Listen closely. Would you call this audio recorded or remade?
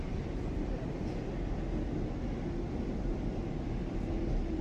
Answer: recorded